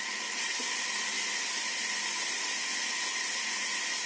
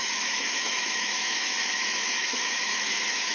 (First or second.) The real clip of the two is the first